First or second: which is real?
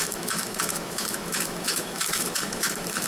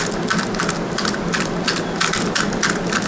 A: second